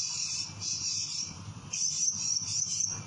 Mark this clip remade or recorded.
remade